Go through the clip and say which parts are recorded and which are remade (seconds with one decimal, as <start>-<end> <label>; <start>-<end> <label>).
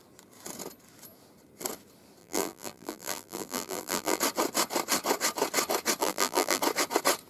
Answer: 0.0-2.2 recorded; 2.2-4.2 remade; 4.2-6.0 recorded; 6.0-6.6 remade; 6.6-7.3 recorded